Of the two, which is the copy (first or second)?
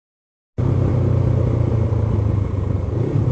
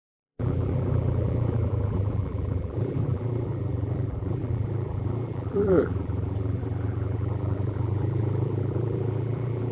second